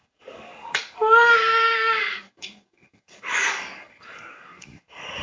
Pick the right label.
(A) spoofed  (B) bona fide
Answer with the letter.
A